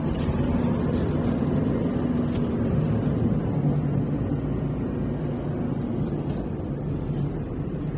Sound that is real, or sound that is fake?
real